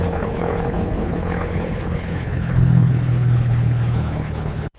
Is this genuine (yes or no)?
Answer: no